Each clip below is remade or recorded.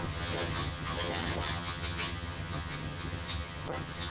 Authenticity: remade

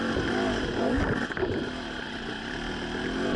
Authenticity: recorded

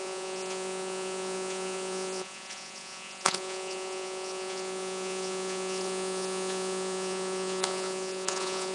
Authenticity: remade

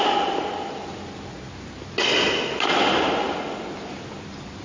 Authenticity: recorded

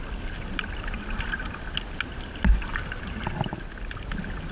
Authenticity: recorded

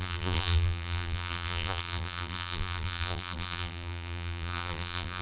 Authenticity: remade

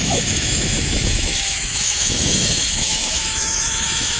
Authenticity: remade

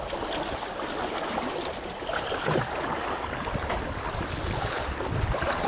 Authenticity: recorded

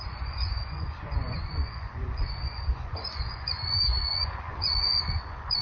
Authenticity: remade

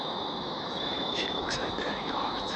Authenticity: remade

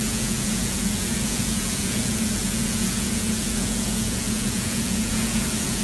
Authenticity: remade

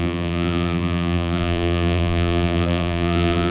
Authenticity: remade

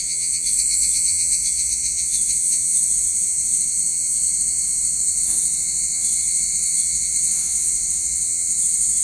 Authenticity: remade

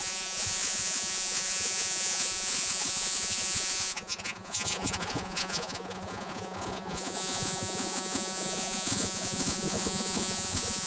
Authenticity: remade